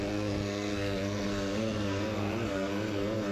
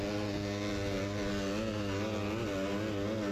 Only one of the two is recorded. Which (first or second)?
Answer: second